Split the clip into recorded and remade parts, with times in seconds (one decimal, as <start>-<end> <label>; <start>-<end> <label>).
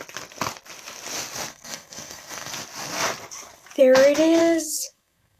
0.0-1.5 recorded; 1.5-2.5 remade; 2.5-4.4 recorded; 4.4-5.4 remade